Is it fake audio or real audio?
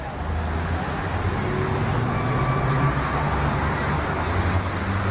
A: real